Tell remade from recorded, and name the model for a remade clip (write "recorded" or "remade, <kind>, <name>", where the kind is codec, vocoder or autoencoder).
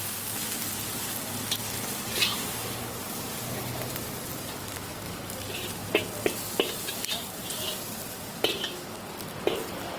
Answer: recorded